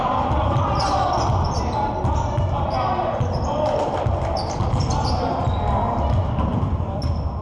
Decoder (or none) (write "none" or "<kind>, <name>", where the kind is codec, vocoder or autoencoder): none